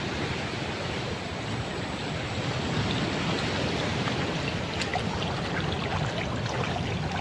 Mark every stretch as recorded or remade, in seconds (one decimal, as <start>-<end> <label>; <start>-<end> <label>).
0.0-7.2 recorded